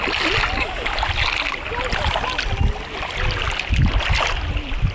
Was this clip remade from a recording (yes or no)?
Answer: no